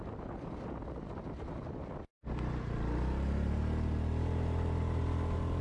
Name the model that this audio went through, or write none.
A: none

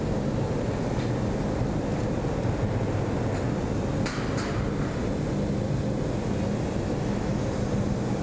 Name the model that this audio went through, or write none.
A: none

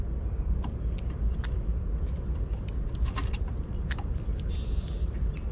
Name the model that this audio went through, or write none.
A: none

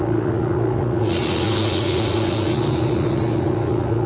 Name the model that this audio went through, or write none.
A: vocoder, Vocos